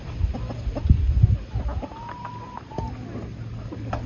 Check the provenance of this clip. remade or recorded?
recorded